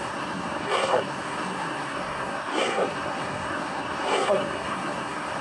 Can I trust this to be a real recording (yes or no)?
no